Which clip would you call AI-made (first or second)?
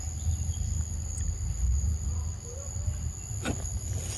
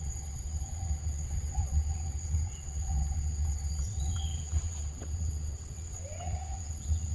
second